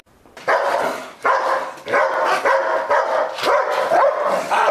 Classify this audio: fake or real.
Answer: real